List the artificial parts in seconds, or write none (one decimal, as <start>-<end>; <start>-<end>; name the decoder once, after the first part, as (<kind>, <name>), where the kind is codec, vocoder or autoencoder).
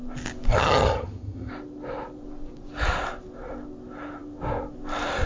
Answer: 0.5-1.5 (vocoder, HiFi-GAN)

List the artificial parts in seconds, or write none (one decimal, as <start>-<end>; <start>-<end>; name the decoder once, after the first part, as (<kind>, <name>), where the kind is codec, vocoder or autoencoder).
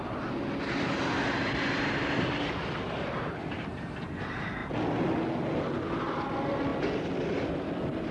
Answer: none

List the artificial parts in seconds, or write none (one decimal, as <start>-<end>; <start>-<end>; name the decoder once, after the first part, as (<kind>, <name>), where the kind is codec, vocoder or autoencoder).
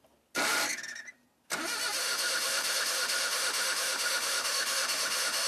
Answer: 2.0-5.5 (autoencoder, DAC-VAE)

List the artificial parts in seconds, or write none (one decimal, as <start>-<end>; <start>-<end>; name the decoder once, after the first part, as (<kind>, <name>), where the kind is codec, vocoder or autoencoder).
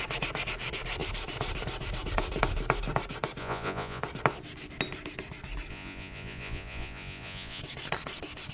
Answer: 3.4-4.0 (vocoder, Vocos); 5.7-7.6